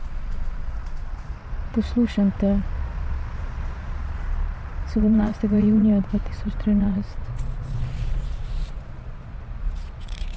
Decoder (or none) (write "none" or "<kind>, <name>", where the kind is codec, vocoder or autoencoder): vocoder, Vocos